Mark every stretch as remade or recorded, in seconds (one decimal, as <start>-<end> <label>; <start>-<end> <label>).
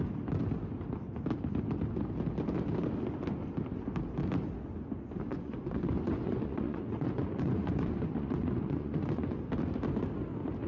0.0-5.3 recorded; 5.3-9.4 remade; 9.4-10.7 recorded